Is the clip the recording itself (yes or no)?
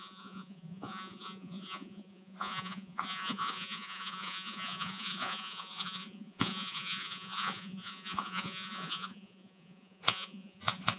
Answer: no